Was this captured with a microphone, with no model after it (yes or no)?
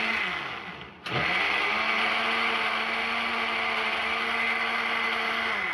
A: yes